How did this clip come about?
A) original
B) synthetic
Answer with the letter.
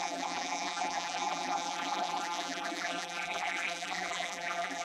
B